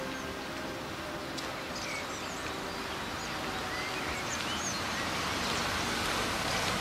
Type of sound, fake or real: real